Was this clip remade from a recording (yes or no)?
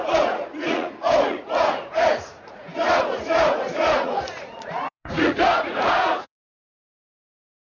yes